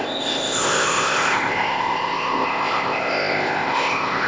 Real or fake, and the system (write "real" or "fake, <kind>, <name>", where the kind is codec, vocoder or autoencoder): fake, codec, ZipCodec